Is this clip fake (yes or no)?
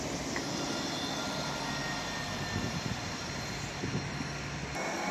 no